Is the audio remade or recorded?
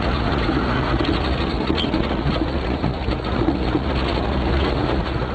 remade